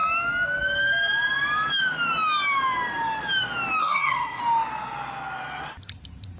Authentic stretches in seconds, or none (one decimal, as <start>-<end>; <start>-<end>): 0.0-3.8; 4.4-6.4